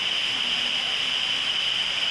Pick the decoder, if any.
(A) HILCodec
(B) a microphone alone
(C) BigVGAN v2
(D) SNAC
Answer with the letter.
B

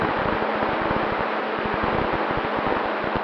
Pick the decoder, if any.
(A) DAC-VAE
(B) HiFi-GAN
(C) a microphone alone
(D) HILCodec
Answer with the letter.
C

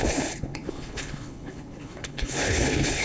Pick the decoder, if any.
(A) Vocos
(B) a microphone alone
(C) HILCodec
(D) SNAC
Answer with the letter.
C